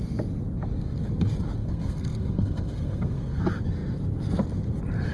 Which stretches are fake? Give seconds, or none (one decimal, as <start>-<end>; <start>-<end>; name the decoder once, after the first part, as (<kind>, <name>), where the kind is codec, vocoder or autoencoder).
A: 1.6-3.4 (codec, SNAC)